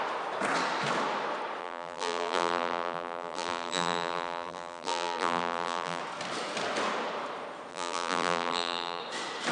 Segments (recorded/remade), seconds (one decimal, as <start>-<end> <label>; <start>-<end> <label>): 0.0-1.6 recorded; 1.6-6.0 remade; 6.0-7.7 recorded; 7.7-9.0 remade; 9.0-9.5 recorded